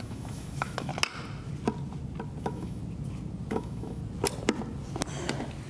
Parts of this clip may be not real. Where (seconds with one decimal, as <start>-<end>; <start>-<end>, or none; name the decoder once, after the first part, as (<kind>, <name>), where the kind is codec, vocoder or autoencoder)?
0.0-0.9 (autoencoder, DAC-VAE); 2.4-2.8; 3.5-4.0